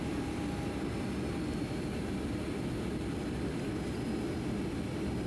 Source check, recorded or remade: recorded